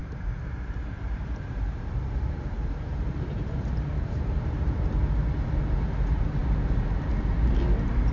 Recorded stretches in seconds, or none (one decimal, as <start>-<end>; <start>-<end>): 3.9-8.1